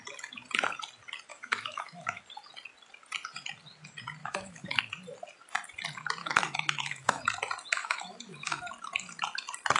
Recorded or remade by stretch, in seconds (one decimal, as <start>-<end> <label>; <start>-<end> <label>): 0.0-1.3 recorded; 1.3-2.2 remade; 2.2-4.2 recorded; 4.2-4.8 remade; 4.8-6.2 recorded; 6.2-7.2 remade; 7.2-7.8 recorded; 7.8-8.6 remade; 8.6-9.8 recorded